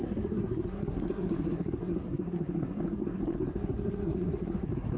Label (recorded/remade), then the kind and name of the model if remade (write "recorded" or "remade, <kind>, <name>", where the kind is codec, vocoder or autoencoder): remade, codec, SNAC